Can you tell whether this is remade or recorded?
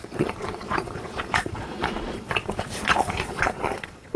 remade